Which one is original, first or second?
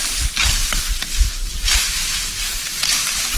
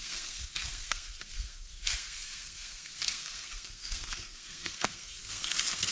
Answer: first